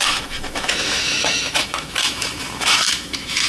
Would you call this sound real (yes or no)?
no